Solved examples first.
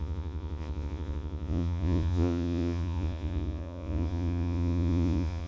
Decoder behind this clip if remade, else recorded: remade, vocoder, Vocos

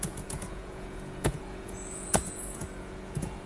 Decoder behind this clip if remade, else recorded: remade, vocoder, Vocos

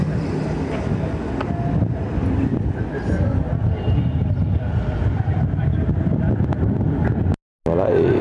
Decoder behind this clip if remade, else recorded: recorded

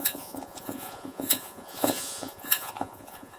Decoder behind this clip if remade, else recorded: remade, vocoder, Vocos